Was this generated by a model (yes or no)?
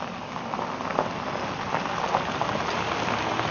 no